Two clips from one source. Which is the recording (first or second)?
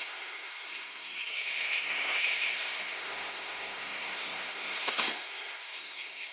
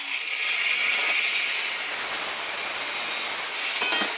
second